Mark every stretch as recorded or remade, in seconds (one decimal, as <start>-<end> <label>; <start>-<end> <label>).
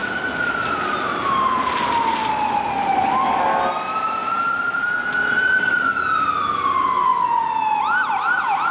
0.0-8.7 recorded